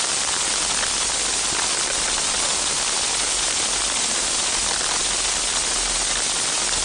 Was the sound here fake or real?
real